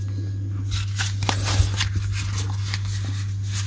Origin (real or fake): real